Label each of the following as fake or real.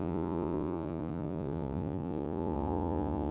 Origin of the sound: fake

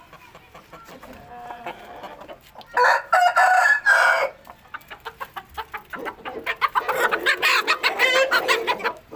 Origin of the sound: real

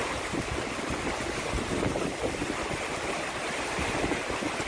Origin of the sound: real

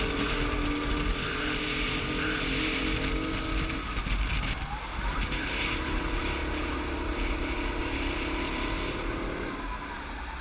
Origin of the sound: real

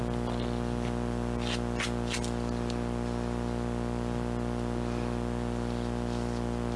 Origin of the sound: real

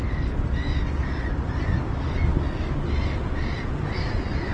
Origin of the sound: real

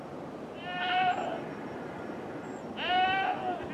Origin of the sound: fake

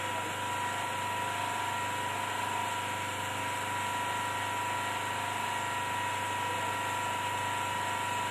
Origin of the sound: real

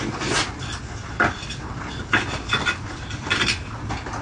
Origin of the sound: real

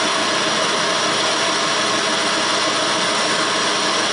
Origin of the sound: real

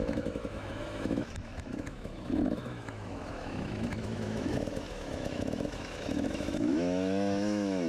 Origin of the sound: fake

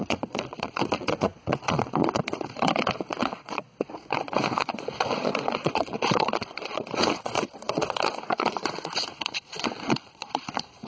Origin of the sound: fake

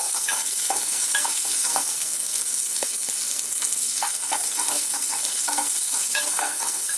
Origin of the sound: fake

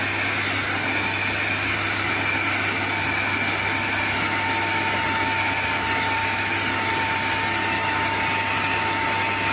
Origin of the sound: real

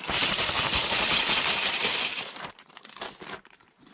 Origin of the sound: fake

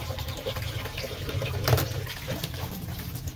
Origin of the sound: fake